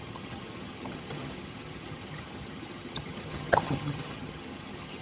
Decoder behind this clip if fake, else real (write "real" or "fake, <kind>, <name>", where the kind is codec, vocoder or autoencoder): fake, vocoder, HiFi-GAN